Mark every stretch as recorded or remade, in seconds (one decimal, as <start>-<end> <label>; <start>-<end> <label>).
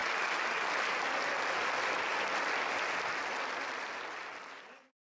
0.0-5.0 recorded